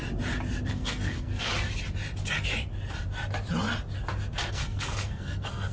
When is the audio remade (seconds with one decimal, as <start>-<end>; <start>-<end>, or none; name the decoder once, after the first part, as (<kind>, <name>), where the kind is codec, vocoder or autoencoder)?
0.7-1.5 (codec, SNAC); 4.5-5.7